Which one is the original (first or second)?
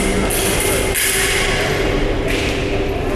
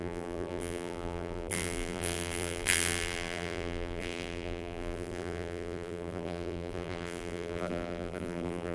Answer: first